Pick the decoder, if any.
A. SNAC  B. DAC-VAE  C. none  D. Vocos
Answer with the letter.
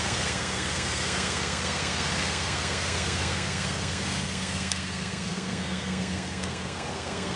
A